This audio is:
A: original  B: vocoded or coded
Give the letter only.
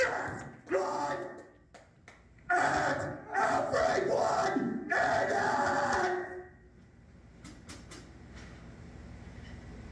A